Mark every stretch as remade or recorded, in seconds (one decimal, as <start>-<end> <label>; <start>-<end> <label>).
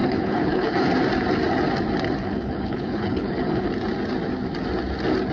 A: 0.0-0.9 remade; 0.9-2.2 recorded; 2.2-3.7 remade; 3.7-5.3 recorded